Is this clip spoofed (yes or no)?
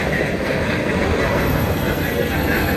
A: yes